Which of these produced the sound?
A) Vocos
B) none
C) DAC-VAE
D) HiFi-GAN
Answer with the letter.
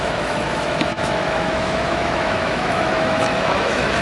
C